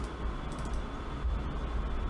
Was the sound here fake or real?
real